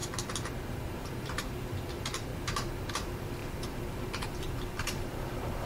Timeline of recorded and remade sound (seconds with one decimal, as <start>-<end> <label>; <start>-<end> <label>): 0.0-1.0 recorded; 1.0-2.3 remade; 2.3-2.9 recorded; 2.9-5.7 remade